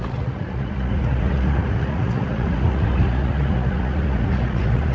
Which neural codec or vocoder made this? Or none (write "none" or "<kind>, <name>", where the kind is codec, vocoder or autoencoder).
vocoder, Vocos